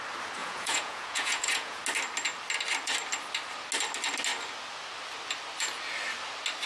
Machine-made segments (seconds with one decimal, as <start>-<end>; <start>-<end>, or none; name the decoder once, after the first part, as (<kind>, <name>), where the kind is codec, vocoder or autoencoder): 0.4-1.8 (vocoder, Vocos)